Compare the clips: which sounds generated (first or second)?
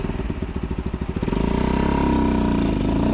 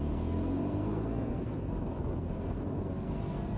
second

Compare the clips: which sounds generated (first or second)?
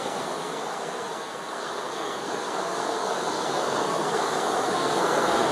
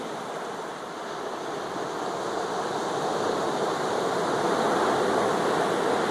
first